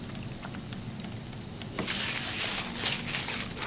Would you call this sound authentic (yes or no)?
yes